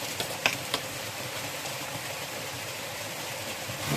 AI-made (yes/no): yes